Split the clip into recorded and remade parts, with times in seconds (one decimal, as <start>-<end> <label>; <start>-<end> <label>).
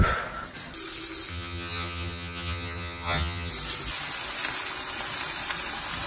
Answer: 0.0-1.3 recorded; 1.3-3.5 remade; 3.5-6.1 recorded